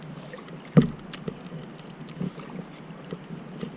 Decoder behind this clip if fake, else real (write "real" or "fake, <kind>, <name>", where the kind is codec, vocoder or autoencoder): real